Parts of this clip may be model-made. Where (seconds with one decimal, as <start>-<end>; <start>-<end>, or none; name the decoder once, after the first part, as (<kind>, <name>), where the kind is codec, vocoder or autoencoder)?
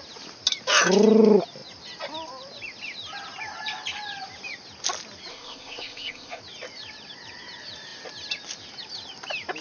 5.3-6.4 (codec, ZipCodec)